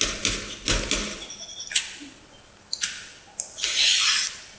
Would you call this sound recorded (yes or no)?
yes